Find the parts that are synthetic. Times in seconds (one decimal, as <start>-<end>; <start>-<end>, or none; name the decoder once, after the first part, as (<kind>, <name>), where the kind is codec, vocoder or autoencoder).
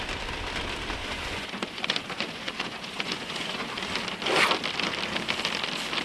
1.0-3.7 (vocoder, Vocos)